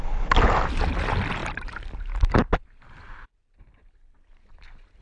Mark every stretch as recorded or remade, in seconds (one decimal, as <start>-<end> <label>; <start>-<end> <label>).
0.0-5.0 recorded